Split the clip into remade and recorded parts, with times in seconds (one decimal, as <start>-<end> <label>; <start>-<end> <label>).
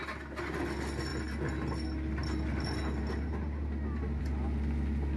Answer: 0.0-5.2 recorded